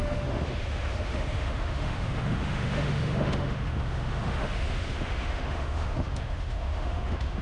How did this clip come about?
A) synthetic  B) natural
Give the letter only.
A